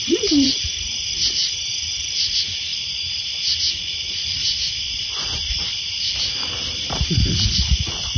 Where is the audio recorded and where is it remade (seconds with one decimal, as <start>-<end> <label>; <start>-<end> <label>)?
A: 0.0-1.4 remade; 1.4-2.1 recorded; 2.1-2.7 remade; 2.7-3.8 recorded; 3.8-4.4 remade; 4.4-7.1 recorded; 7.1-8.2 remade